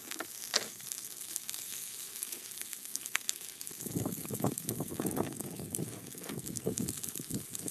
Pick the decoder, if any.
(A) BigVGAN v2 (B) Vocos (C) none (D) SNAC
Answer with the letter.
D